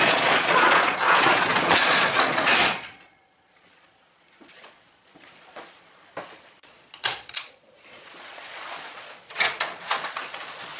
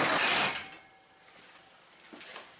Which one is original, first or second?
second